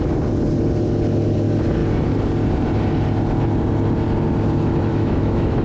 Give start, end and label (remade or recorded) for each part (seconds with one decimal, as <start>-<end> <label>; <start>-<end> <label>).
0.0-4.9 recorded; 4.9-5.6 remade